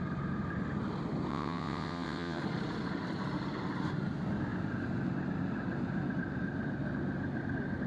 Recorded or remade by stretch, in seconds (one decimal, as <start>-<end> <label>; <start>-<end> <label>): 0.0-1.3 recorded; 1.3-2.4 remade; 2.4-7.9 recorded